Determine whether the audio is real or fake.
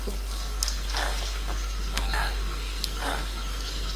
fake